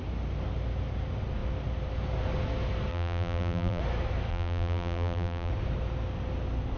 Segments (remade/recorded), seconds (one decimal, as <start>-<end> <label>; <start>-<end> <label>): 0.0-2.9 recorded; 2.9-3.8 remade; 3.8-4.3 recorded; 4.3-5.5 remade; 5.5-6.8 recorded

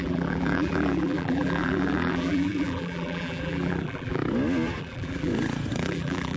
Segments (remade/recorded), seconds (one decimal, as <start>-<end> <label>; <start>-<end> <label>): 0.0-4.2 remade; 4.2-4.8 recorded; 4.8-5.3 remade; 5.3-5.8 recorded; 5.8-6.4 remade

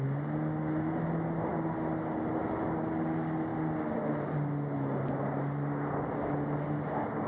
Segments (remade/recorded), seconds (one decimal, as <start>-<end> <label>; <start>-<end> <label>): 0.0-7.3 recorded

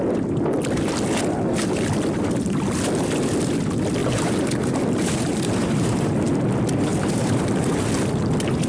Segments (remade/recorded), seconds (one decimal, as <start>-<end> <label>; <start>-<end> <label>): 0.0-4.0 recorded; 4.0-6.1 remade; 6.1-6.9 recorded; 6.9-7.9 remade; 7.9-8.7 recorded

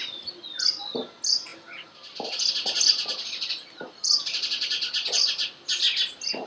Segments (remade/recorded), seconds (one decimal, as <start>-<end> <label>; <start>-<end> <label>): 0.0-6.5 remade

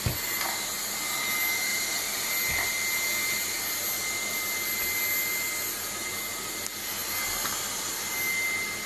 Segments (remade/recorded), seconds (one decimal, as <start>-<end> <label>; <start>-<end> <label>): 0.0-1.7 recorded; 1.7-2.3 remade; 2.3-8.9 recorded